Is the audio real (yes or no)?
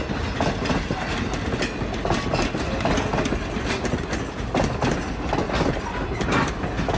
yes